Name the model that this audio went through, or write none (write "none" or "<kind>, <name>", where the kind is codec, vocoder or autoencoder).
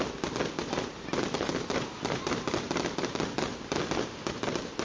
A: none